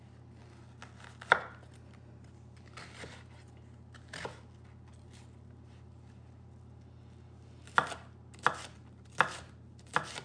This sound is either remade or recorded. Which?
recorded